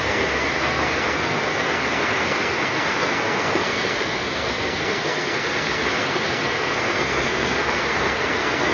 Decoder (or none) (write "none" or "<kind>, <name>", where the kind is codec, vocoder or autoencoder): codec, SNAC